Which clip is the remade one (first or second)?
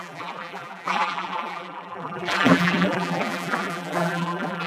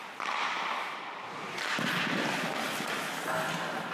first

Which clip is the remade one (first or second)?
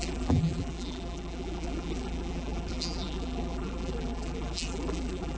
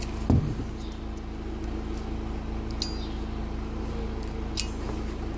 first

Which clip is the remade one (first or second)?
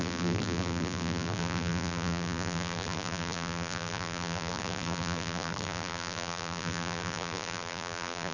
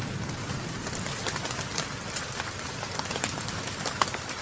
first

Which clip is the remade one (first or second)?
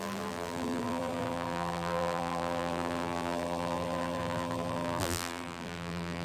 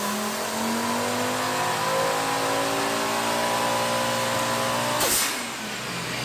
first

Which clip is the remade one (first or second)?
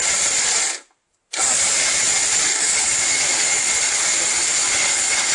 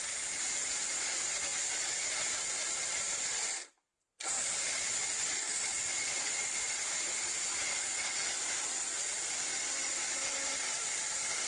second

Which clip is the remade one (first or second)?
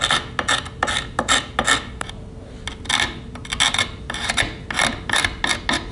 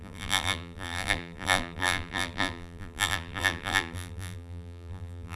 second